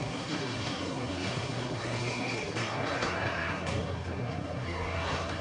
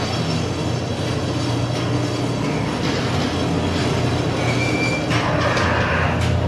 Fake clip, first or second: first